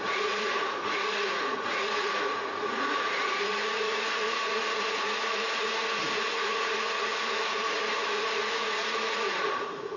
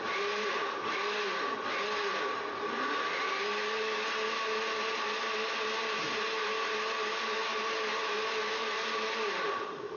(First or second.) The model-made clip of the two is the first